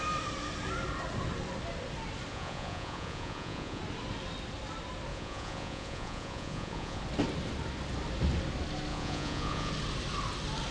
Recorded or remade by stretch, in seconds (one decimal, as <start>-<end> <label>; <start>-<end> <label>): 0.0-2.3 recorded; 2.3-3.8 remade; 3.8-5.1 recorded; 5.1-7.0 remade; 7.0-8.9 recorded; 8.9-9.7 remade; 9.7-10.7 recorded